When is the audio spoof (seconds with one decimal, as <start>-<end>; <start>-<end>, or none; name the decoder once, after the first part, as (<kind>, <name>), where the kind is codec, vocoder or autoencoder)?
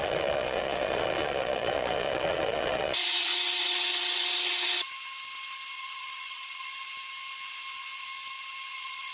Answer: 0.0-3.3 (vocoder, Vocos); 5.7-6.7; 8.7-9.1